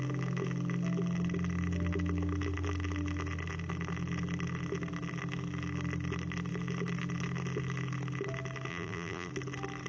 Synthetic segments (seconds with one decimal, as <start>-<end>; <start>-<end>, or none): 8.7-9.3

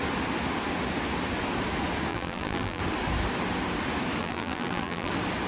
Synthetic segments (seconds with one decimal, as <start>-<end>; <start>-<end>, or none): 2.1-2.8; 4.2-5.1

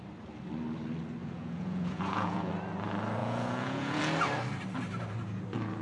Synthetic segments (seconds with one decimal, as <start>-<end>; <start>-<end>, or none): 1.2-2.5; 3.2-4.0

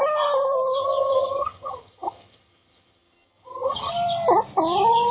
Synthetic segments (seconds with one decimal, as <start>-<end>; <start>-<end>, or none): 0.8-3.9